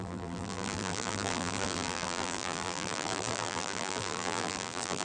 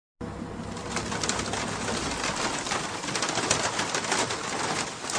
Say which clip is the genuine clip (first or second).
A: second